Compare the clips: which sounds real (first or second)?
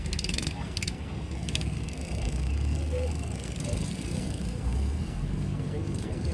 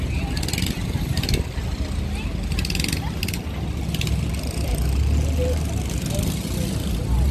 second